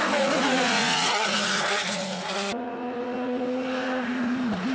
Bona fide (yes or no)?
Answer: no